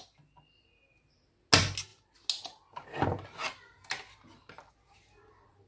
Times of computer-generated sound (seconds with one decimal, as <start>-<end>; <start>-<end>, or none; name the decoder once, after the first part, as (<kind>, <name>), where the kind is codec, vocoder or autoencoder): none

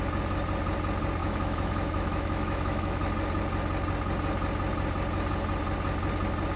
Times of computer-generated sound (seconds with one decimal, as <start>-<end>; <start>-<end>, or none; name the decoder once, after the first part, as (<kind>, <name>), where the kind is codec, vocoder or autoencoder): 1.2-3.1 (autoencoder, DAC-VAE)